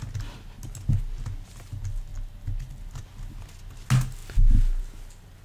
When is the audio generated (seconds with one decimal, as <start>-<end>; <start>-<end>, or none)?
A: none